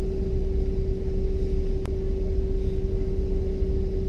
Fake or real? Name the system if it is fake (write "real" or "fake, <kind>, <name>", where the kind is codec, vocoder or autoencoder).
real